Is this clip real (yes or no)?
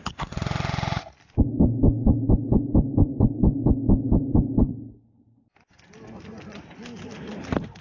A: yes